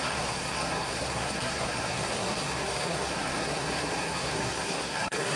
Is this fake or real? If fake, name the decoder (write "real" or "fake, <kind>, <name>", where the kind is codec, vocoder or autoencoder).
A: fake, codec, SNAC